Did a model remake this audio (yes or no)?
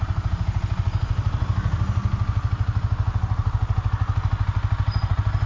no